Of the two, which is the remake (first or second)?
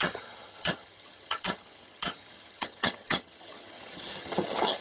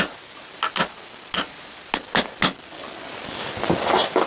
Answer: first